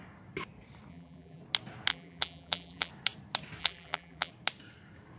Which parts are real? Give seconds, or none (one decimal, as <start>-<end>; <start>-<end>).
0.0-0.9; 1.4-1.9; 2.9-3.6; 4.3-5.2